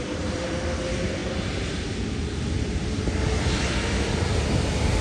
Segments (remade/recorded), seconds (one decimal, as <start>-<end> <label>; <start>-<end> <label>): 0.0-1.2 remade; 1.2-4.2 recorded; 4.2-5.0 remade